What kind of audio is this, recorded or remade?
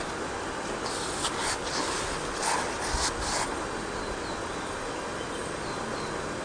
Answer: recorded